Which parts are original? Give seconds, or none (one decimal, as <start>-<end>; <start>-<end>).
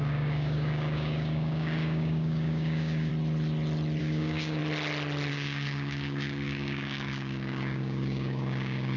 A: 3.1-4.0; 4.6-5.3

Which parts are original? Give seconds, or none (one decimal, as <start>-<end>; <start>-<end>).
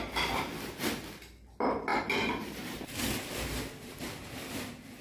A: 0.0-5.0